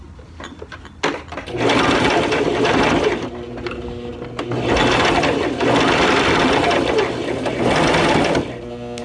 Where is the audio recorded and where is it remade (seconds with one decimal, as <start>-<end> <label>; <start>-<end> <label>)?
0.0-9.0 recorded